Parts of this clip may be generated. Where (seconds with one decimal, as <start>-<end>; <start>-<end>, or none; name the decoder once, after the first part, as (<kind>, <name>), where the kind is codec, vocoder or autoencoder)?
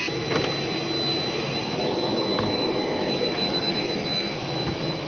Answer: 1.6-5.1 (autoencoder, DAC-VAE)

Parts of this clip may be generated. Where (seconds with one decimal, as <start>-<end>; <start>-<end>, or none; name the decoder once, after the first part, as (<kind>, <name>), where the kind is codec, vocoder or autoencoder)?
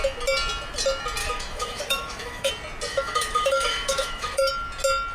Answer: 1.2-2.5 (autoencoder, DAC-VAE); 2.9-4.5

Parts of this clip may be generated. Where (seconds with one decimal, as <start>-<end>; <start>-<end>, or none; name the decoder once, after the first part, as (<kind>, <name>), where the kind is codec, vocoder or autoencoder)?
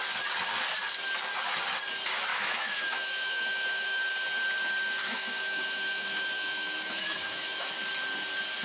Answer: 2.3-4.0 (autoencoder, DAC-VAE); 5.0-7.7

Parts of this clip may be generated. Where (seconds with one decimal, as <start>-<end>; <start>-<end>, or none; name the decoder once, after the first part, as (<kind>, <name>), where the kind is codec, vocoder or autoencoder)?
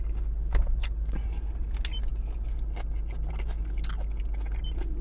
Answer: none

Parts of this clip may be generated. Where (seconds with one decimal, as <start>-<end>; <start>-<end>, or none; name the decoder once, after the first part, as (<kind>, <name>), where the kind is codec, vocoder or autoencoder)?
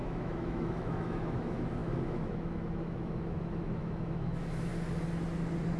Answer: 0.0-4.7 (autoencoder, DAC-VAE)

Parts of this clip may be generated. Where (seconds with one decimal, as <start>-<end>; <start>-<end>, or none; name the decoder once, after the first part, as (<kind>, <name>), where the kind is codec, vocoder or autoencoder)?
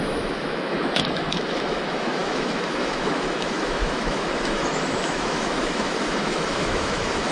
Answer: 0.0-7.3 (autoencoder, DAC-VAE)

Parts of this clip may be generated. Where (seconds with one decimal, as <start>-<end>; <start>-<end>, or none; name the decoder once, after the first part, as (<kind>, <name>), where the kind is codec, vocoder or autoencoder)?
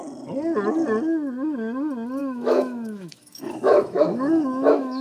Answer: 2.2-5.0 (autoencoder, DAC-VAE)